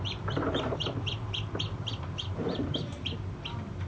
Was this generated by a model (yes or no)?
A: yes